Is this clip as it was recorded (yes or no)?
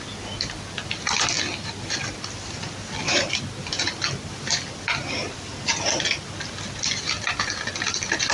yes